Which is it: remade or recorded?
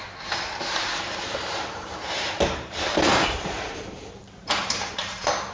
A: remade